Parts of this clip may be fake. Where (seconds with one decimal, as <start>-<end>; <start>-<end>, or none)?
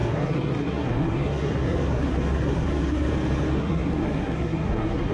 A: 0.0-3.1; 3.6-5.1